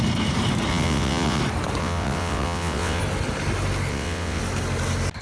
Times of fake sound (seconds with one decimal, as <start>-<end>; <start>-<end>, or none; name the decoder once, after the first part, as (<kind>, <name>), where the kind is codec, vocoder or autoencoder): 0.7-1.4 (vocoder, WaveNeXt); 1.8-3.0; 3.9-4.4